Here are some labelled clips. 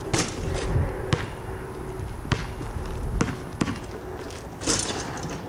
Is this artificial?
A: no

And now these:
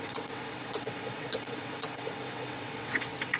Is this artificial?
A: yes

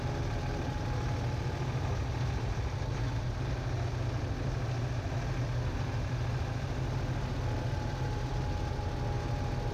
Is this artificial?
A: no